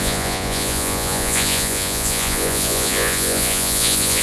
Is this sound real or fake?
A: fake